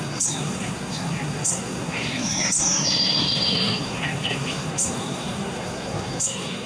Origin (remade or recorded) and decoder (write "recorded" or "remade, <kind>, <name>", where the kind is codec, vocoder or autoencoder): remade, codec, SNAC